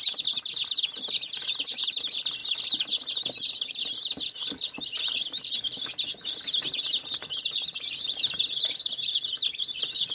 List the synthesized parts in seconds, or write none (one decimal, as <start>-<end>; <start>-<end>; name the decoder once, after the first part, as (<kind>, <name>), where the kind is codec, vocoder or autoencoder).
none